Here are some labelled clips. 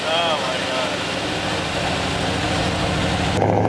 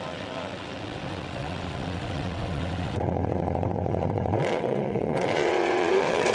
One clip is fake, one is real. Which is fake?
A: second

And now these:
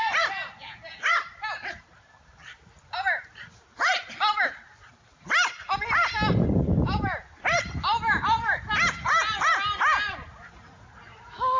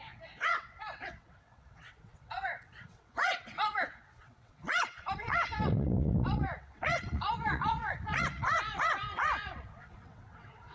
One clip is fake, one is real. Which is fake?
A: second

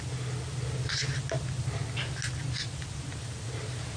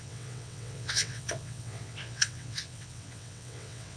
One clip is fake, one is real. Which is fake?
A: second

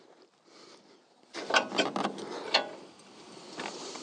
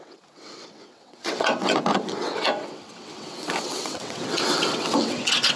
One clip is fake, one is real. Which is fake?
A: second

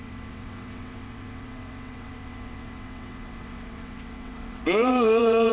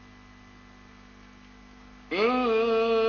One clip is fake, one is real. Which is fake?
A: first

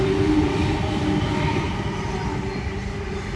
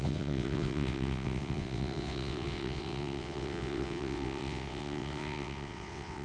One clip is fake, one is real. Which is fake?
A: second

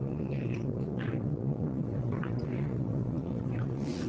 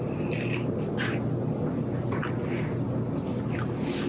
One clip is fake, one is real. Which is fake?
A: first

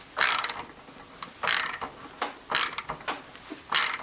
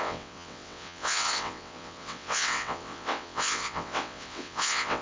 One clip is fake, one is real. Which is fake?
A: second